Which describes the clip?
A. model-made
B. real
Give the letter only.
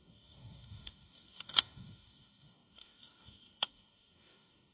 A